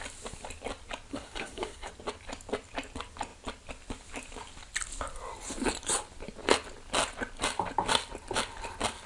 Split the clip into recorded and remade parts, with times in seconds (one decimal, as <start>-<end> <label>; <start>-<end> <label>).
0.0-1.1 recorded; 1.1-1.9 remade; 1.9-9.1 recorded